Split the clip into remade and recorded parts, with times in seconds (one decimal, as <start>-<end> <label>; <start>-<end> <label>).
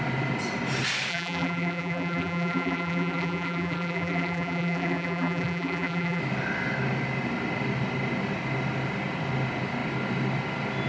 0.0-1.1 recorded; 1.1-6.2 remade; 6.2-10.9 recorded